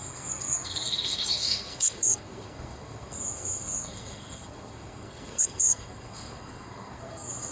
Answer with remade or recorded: remade